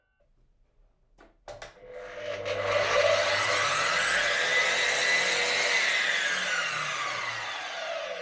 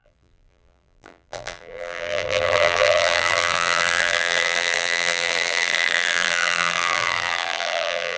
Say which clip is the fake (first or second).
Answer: second